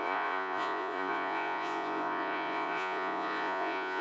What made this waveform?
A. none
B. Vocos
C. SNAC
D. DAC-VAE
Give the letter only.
B